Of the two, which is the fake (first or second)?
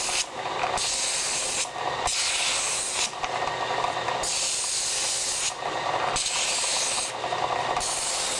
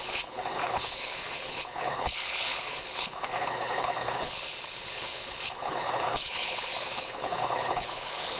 second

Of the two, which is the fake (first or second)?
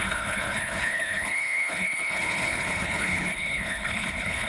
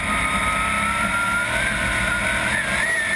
first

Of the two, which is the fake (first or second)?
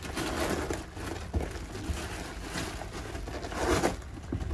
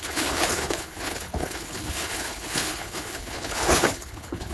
second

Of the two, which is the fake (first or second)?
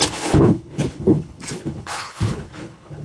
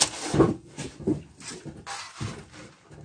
first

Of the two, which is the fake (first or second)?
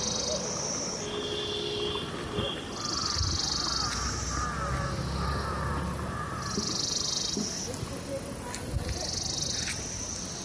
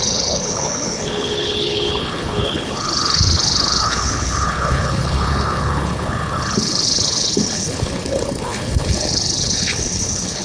second